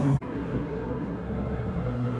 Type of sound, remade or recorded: remade